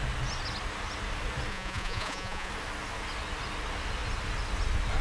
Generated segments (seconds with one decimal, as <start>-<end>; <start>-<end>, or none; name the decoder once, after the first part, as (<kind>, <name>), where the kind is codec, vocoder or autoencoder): 1.5-2.5 (vocoder, Vocos)